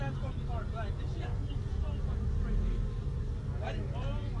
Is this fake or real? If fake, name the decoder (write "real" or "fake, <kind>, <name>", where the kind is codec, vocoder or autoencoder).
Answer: real